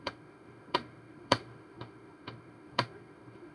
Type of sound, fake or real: fake